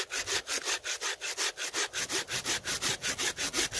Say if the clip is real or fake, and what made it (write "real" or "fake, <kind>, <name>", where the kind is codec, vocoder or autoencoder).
real